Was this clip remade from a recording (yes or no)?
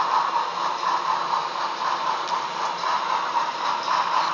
yes